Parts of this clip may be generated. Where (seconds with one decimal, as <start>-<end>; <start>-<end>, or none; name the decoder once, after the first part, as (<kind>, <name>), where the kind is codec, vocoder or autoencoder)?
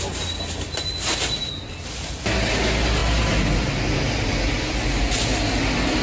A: none